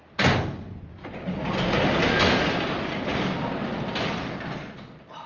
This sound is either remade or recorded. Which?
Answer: recorded